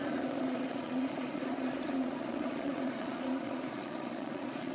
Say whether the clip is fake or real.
fake